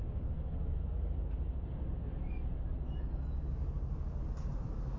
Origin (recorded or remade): recorded